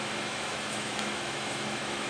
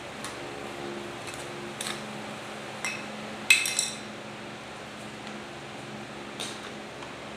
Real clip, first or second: second